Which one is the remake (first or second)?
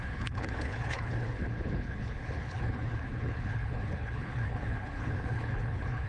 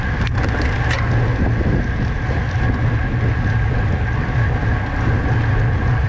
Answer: first